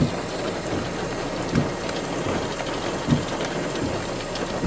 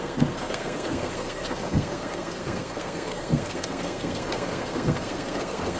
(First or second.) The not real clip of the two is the second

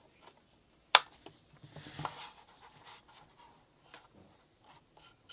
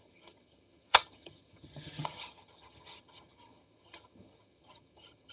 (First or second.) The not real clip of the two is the second